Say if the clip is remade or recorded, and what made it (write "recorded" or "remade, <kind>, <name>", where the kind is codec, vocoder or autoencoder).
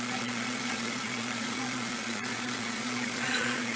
remade, vocoder, Vocos